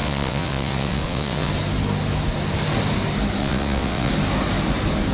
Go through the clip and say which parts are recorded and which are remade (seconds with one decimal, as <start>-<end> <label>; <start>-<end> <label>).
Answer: 0.0-1.5 remade; 1.5-3.4 recorded; 3.4-4.1 remade; 4.1-5.1 recorded